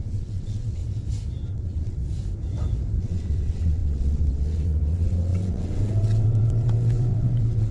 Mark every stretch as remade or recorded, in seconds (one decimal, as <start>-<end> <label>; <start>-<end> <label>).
0.0-0.8 remade; 0.8-1.5 recorded; 1.5-2.0 remade; 2.0-3.0 recorded; 3.0-7.7 remade